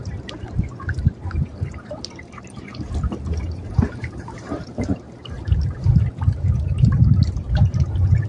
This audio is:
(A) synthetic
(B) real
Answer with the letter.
A